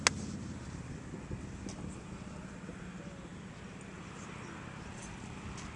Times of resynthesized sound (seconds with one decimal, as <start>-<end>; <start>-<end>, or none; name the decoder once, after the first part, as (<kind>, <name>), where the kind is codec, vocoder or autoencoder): none